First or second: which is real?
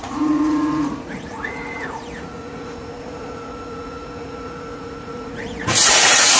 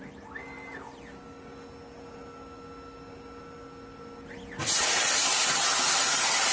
second